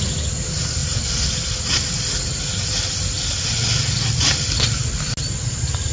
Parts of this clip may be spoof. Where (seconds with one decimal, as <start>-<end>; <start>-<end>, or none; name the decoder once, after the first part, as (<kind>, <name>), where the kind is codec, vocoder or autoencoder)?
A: none